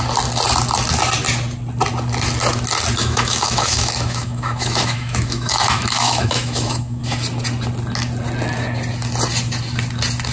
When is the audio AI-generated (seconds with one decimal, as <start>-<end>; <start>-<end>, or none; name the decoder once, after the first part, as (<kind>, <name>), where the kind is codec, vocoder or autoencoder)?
3.0-7.0 (autoencoder, DAC-VAE)

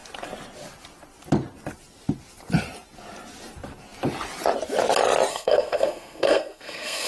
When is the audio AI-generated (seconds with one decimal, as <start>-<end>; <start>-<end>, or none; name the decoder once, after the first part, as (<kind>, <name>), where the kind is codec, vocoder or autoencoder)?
5.3-7.1 (codec, SNAC)

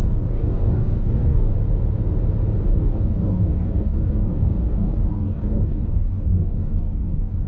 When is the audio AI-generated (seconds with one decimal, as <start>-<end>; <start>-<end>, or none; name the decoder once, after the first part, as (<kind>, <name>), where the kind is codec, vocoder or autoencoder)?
0.0-1.5 (codec, DAC); 2.7-7.5